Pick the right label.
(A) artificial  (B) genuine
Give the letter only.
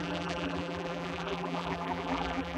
A